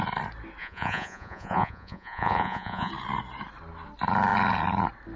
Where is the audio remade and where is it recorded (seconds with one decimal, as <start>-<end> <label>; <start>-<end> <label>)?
0.0-0.6 recorded; 0.6-2.9 remade; 2.9-5.2 recorded